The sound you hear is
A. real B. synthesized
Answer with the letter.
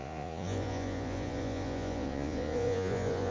B